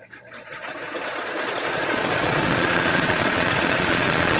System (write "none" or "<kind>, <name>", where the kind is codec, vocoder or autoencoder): vocoder, Vocos